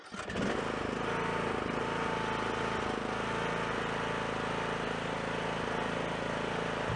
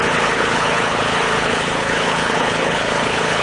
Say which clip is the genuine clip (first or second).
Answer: first